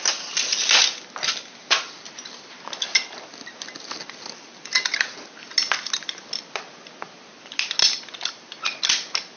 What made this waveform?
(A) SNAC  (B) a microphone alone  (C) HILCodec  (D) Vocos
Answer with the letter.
B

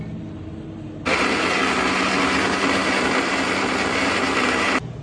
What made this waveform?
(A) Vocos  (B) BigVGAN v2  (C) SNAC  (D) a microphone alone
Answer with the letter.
D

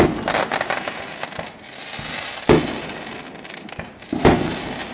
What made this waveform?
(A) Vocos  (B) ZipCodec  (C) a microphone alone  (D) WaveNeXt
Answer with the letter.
C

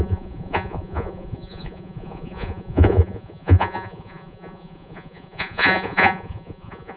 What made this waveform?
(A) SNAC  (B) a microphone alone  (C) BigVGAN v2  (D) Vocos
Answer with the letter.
D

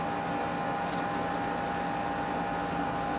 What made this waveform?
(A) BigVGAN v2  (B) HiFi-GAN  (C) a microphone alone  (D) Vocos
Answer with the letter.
C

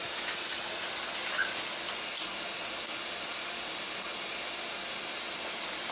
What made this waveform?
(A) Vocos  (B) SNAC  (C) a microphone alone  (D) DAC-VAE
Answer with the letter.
C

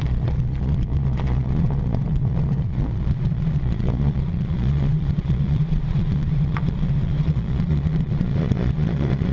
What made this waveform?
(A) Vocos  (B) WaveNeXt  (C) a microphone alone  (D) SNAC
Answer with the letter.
A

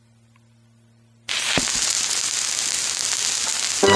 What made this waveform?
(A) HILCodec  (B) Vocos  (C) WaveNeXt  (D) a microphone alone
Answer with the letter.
D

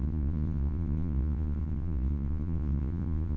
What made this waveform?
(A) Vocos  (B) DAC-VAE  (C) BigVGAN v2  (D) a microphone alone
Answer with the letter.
A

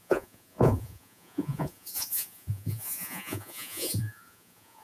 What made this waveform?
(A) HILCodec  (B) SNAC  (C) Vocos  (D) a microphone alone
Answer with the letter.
C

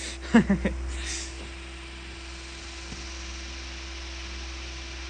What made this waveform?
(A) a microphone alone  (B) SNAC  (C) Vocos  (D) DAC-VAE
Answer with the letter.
A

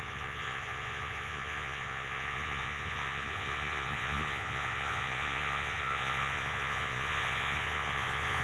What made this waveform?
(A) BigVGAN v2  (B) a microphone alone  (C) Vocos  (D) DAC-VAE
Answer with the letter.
C